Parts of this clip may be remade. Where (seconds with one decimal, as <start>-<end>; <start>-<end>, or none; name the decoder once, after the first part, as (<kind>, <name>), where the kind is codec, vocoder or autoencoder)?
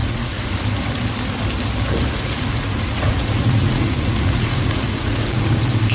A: 0.0-0.6 (vocoder, Vocos); 2.0-5.5